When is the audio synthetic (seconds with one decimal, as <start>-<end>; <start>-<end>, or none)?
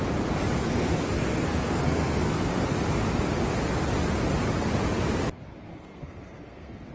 0.6-2.5; 5.7-6.9